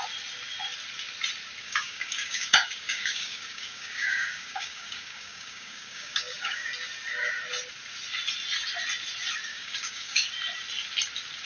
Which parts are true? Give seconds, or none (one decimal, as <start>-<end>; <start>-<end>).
0.0-1.6; 6.7-9.5; 10.3-11.5